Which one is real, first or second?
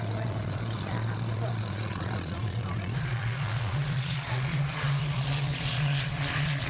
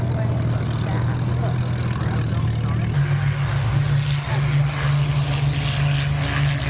second